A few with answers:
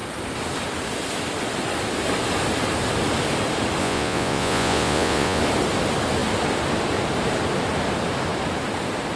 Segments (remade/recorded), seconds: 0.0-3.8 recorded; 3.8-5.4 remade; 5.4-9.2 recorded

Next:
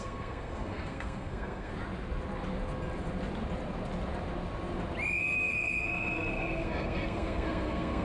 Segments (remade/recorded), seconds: 0.0-1.7 remade; 1.7-5.2 recorded; 5.2-8.0 remade